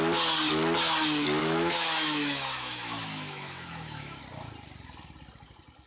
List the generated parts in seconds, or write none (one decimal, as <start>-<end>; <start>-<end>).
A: 1.4-4.2

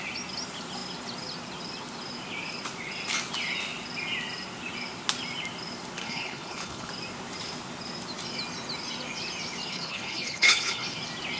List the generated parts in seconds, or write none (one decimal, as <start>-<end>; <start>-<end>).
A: 6.0-6.9; 9.7-11.0

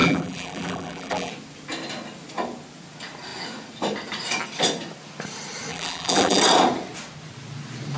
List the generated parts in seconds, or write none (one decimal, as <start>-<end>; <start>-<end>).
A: 0.0-1.3; 5.7-6.4

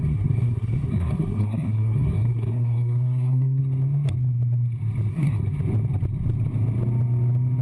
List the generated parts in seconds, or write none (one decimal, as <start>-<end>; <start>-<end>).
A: 0.0-3.6; 5.1-5.5